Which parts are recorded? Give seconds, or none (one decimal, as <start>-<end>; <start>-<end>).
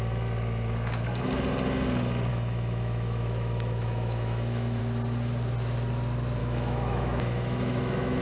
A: 0.0-2.3; 4.8-6.4